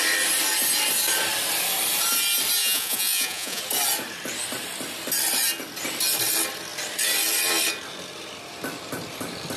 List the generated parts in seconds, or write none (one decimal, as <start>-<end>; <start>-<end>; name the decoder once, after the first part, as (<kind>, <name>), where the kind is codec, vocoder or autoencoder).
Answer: 2.6-3.6 (vocoder, Vocos)